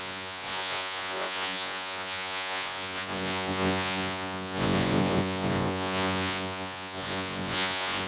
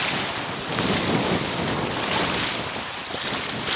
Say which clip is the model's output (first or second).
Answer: first